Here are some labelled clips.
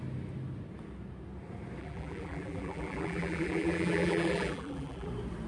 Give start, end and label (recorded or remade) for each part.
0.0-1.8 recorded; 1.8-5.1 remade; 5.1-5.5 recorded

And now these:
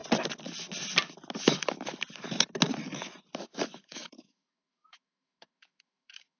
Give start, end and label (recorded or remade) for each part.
0.0-1.4 recorded; 1.4-1.9 remade; 1.9-3.4 recorded; 3.4-6.4 remade

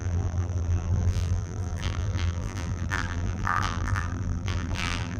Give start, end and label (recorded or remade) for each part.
0.0-5.2 remade

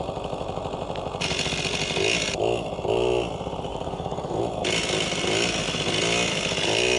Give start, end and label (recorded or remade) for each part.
0.0-3.7 recorded; 3.7-4.4 remade; 4.4-7.0 recorded

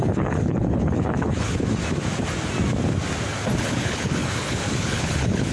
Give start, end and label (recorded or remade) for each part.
0.0-1.8 remade; 1.8-3.6 recorded; 3.6-5.5 remade